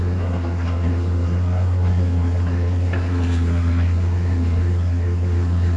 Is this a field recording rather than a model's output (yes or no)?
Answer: no